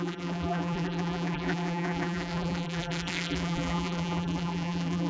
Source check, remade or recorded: remade